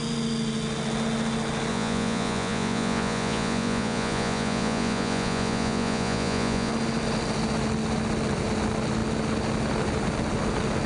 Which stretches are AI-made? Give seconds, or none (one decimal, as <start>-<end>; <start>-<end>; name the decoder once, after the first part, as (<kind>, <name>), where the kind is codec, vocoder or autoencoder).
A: 1.7-6.7 (vocoder, Vocos)